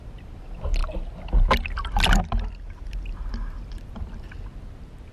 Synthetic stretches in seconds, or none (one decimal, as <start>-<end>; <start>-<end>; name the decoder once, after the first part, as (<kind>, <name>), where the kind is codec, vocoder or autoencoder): none